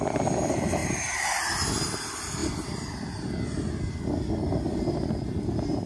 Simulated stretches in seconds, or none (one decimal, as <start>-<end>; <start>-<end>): 0.8-1.4